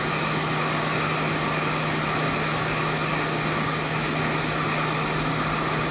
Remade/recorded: recorded